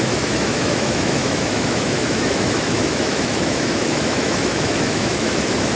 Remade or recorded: remade